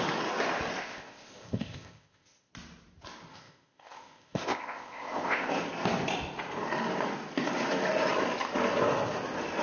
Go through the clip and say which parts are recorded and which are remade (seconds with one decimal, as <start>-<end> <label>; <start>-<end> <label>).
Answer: 0.0-0.8 recorded; 0.8-2.5 remade; 2.5-3.3 recorded; 3.3-5.5 remade; 5.5-9.6 recorded